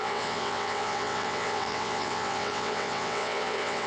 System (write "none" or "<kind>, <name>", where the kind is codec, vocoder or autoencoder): vocoder, WaveNeXt